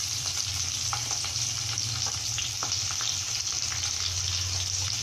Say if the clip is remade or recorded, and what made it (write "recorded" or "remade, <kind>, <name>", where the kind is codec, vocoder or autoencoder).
recorded